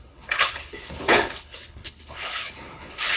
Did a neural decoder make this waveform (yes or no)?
yes